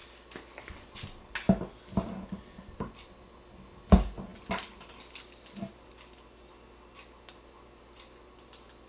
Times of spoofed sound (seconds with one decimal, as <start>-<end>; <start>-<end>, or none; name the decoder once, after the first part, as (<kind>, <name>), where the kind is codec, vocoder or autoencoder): none